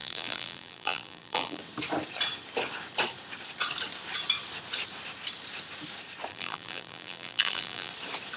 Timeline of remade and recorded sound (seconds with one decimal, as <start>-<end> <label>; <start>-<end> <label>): 0.0-1.6 remade; 1.6-6.3 recorded; 6.3-7.9 remade; 7.9-8.4 recorded